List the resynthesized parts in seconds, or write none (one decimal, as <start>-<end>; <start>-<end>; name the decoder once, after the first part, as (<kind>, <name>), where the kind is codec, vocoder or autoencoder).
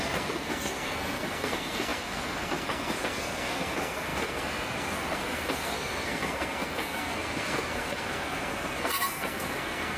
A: 0.0-10.0 (codec, SNAC)